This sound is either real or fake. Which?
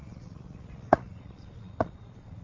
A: fake